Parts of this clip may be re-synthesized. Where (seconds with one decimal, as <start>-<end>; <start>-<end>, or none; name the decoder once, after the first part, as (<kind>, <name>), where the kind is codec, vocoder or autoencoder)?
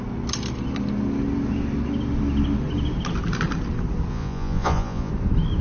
4.1-5.1 (vocoder, Vocos)